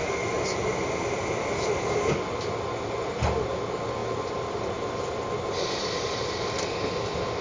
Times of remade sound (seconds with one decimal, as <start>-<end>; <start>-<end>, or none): none